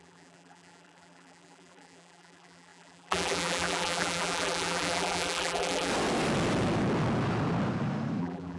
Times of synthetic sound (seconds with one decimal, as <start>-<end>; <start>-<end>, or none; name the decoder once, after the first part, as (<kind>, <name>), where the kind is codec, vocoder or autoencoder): 0.0-5.9 (vocoder, BigVGAN v2); 8.2-8.6